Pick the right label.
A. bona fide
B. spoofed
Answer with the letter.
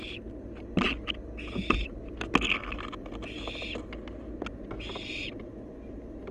A